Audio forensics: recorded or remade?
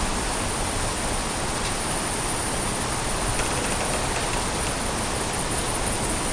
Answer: recorded